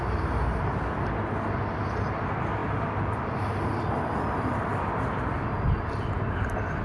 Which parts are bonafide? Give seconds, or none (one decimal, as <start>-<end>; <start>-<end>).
0.8-2.6; 5.5-6.8